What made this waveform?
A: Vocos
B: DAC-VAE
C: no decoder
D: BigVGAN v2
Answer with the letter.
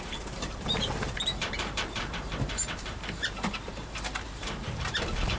D